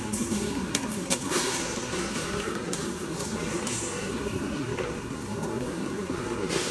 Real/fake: fake